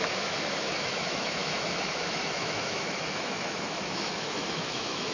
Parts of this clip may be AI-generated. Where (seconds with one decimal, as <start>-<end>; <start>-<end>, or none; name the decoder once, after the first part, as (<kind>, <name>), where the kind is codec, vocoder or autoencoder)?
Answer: 0.0-5.1 (autoencoder, DAC-VAE)